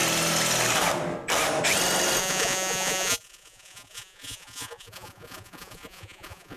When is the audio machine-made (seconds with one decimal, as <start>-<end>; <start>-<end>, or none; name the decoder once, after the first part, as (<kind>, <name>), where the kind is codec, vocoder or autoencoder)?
2.2-6.6 (vocoder, Vocos)